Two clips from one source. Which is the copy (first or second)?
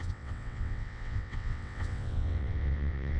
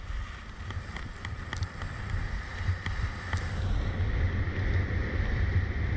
first